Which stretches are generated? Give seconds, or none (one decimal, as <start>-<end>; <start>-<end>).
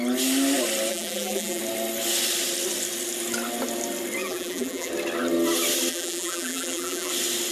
0.9-1.6; 4.2-4.9; 5.9-7.1